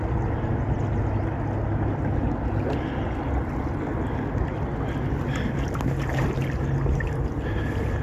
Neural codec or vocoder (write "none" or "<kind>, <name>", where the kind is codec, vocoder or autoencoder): none